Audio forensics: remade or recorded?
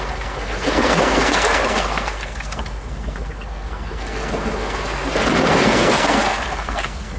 remade